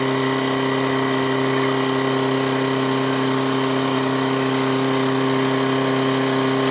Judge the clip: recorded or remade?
recorded